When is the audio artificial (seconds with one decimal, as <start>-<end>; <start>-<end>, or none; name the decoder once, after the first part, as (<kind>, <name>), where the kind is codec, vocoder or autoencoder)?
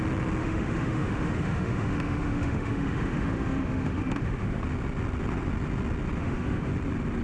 0.4-4.6 (autoencoder, DAC-VAE); 6.2-6.7